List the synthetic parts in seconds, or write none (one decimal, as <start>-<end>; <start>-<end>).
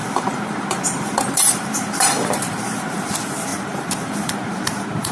0.0-3.1; 3.5-5.1